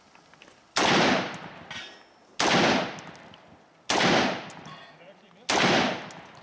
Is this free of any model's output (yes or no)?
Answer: yes